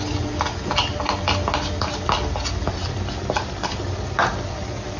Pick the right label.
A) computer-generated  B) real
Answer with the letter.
B